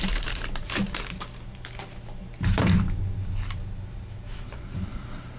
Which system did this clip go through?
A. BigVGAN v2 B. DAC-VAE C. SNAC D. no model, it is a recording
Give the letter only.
A